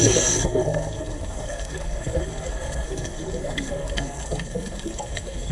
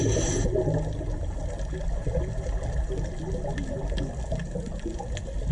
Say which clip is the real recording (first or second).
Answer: second